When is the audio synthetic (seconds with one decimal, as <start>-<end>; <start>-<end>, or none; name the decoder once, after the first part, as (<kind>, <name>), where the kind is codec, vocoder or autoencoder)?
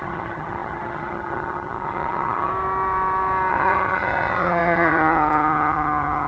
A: 0.0-2.5 (vocoder, HiFi-GAN); 3.5-6.3